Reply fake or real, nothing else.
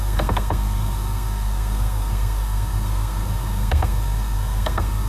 fake